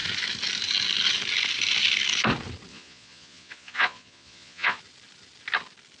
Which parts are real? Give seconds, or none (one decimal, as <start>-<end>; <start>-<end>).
0.0-2.7; 4.8-6.0